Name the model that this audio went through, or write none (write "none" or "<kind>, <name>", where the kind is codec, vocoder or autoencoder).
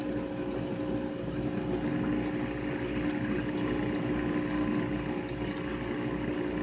none